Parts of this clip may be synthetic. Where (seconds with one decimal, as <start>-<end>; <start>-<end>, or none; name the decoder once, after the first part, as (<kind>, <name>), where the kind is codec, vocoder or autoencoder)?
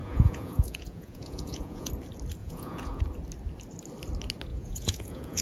0.0-1.9 (vocoder, Vocos); 2.4-3.0; 4.5-5.4